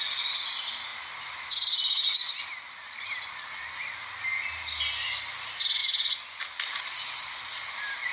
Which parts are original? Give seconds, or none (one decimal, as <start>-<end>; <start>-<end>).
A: 0.0-5.8; 6.4-8.1